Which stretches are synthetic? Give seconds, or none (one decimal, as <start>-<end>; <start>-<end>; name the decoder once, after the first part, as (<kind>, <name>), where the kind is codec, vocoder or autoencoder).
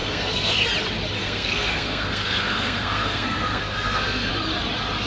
0.0-0.7 (codec, SNAC); 1.2-4.3